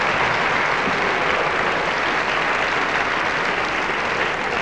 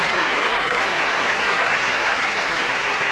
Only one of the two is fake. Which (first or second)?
second